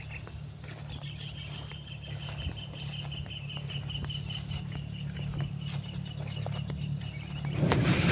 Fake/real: real